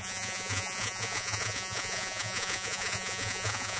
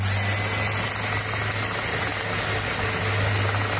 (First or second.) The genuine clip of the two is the second